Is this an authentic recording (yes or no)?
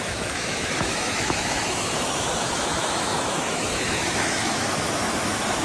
no